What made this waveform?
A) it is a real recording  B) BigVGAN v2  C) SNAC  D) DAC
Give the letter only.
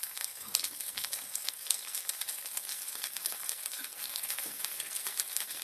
C